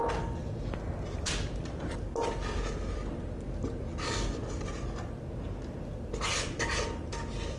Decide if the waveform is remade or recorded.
recorded